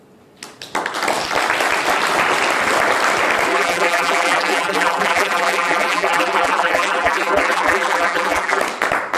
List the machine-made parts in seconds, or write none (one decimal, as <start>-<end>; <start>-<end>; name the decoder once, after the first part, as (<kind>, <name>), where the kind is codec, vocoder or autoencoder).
3.5-8.6 (vocoder, BigVGAN v2)